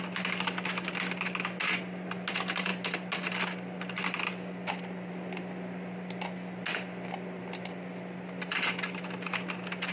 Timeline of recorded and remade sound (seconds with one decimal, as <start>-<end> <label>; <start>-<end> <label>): 0.0-9.9 recorded